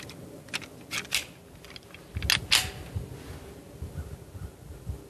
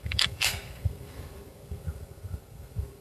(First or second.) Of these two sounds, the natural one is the first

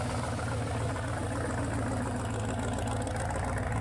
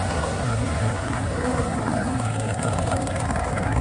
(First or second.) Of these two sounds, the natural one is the first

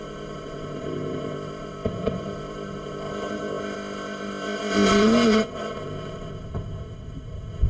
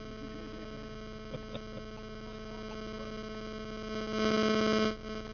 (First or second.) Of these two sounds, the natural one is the second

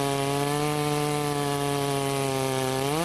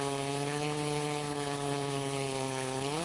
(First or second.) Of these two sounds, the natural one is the first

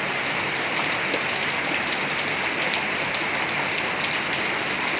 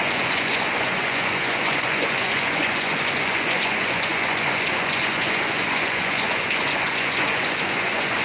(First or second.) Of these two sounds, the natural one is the first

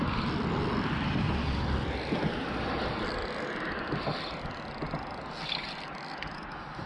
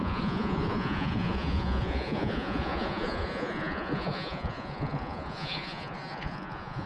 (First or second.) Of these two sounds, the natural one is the first